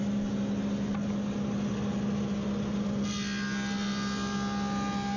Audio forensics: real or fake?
real